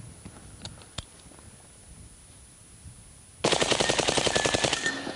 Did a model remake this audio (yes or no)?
no